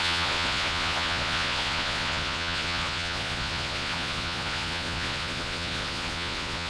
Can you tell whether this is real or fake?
fake